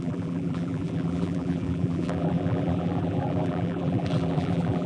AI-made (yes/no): yes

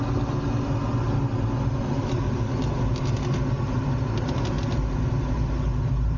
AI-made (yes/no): no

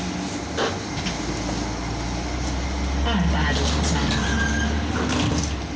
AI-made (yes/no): no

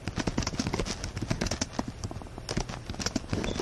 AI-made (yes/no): no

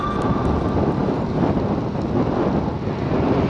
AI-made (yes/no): no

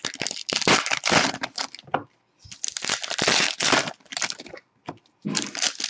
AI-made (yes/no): no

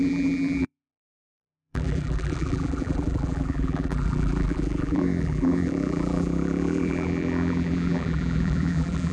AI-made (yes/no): yes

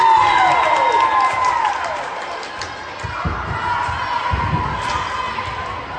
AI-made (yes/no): no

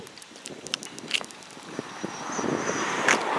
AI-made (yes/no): no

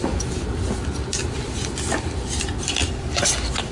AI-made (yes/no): yes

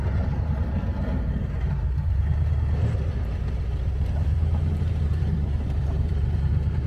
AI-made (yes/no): yes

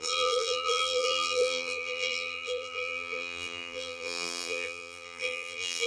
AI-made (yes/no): yes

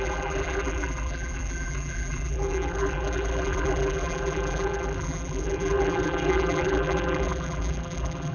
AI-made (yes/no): yes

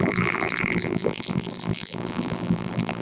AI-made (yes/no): yes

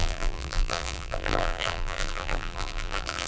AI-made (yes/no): yes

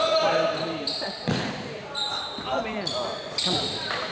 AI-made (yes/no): yes